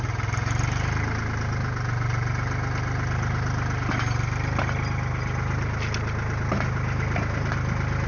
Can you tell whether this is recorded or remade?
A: recorded